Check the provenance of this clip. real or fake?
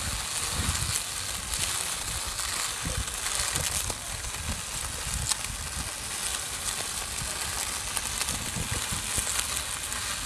real